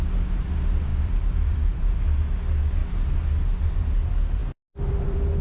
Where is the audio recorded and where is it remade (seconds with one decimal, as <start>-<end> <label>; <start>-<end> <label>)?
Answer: 0.0-0.9 recorded; 0.9-2.0 remade; 2.0-5.4 recorded